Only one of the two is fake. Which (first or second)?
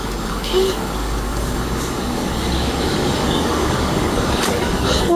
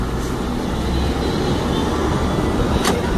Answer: first